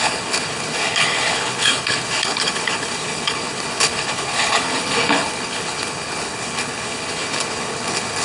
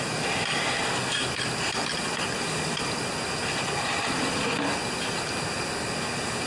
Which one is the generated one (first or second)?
first